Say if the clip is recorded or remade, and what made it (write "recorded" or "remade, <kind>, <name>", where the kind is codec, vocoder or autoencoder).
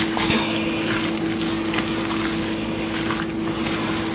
recorded